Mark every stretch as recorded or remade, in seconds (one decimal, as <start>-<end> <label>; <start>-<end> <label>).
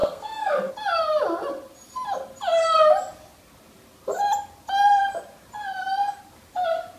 0.0-0.7 remade; 0.7-7.0 recorded